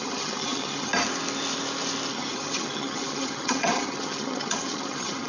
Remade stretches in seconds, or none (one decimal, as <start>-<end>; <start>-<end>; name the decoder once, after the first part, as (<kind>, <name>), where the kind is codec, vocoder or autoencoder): 0.0-0.9 (vocoder, HiFi-GAN); 2.1-5.3